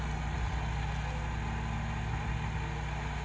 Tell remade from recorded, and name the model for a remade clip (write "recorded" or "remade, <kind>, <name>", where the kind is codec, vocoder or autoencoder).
recorded